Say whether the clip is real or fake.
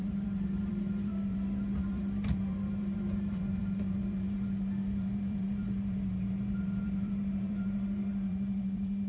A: fake